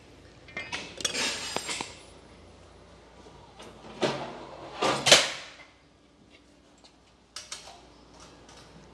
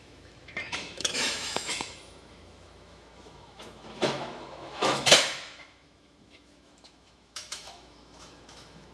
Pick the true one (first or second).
first